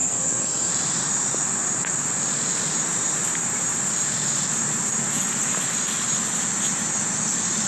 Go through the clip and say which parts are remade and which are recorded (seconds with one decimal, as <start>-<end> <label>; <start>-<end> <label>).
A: 0.0-0.7 remade; 0.7-7.7 recorded